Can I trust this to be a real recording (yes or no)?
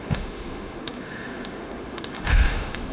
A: no